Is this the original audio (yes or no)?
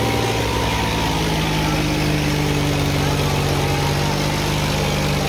yes